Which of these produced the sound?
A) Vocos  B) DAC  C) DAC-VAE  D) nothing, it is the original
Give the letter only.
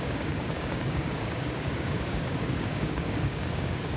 B